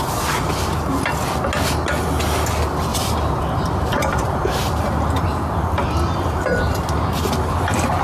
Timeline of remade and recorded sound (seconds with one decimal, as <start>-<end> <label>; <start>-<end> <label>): 0.0-2.9 recorded; 2.9-4.5 remade; 4.5-8.0 recorded